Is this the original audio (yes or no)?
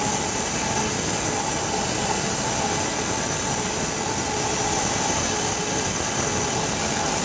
yes